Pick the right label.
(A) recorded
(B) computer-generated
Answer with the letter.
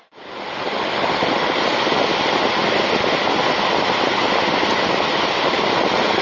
A